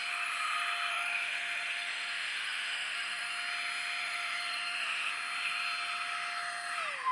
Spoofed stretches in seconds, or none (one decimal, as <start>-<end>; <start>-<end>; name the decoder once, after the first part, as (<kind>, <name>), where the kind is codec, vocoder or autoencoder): 0.9-3.3 (autoencoder, DAC-VAE); 4.0-5.1